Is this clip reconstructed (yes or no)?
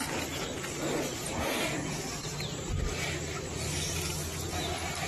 no